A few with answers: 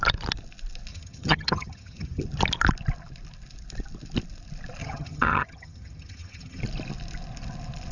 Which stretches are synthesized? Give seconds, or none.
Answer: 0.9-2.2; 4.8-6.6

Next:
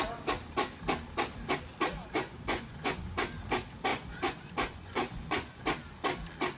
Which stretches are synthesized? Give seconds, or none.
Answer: 1.9-3.2; 3.9-5.6

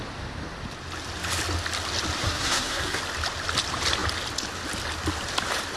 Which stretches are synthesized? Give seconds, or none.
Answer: 2.2-3.0

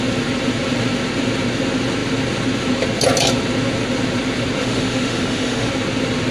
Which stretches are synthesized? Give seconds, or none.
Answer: 4.6-5.7